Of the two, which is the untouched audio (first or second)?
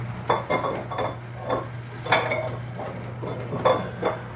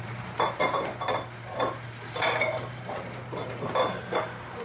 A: first